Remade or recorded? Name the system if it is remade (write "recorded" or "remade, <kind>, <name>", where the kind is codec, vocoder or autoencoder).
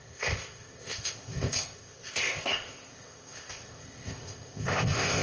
remade, codec, ZipCodec